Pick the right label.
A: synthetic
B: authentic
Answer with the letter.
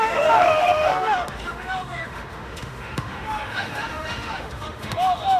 A